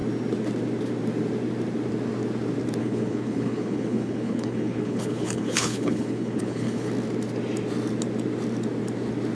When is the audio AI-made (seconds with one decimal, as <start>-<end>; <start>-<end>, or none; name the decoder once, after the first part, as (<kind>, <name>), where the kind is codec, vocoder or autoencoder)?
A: 2.8-6.9 (codec, HILCodec)